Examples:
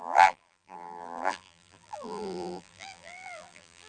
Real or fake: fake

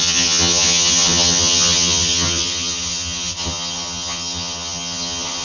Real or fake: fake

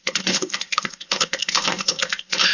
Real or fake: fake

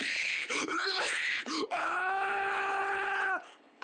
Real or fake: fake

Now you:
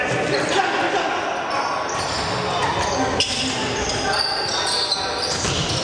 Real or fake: real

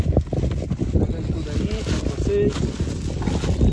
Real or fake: real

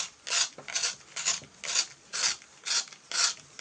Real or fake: real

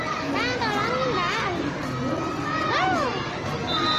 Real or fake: real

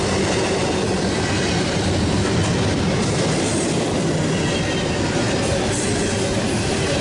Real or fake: real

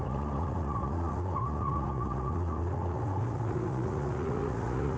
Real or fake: fake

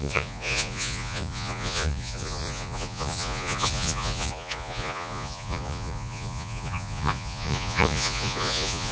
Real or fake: fake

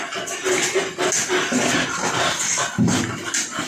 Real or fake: real